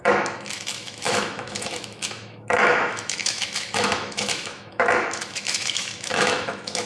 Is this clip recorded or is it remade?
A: remade